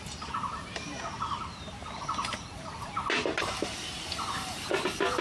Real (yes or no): no